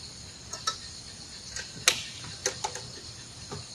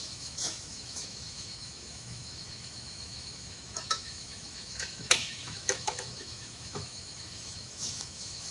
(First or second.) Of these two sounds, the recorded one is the first